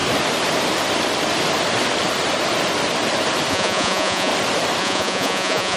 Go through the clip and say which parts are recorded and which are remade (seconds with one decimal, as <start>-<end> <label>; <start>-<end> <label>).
0.0-3.5 recorded; 3.5-4.3 remade; 4.3-4.8 recorded; 4.8-5.8 remade